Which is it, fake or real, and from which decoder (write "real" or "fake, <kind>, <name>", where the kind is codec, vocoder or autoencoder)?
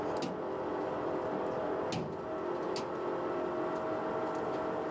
real